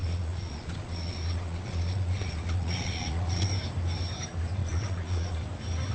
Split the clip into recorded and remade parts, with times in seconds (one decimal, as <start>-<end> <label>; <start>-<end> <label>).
0.0-3.5 remade; 3.5-4.6 recorded; 4.6-5.4 remade; 5.4-5.9 recorded